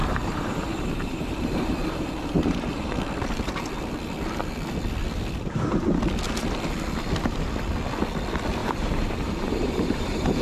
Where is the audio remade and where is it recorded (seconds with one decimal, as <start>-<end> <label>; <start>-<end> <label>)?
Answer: 0.0-2.9 remade; 2.9-8.6 recorded; 8.6-10.4 remade